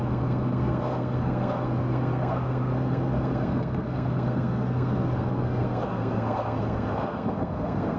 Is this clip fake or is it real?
fake